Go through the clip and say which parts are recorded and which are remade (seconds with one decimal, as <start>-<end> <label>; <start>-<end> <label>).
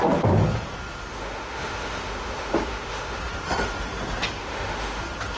0.0-1.1 recorded; 1.1-3.2 remade; 3.2-4.4 recorded; 4.4-5.0 remade; 5.0-5.4 recorded